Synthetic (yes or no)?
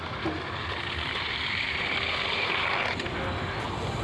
no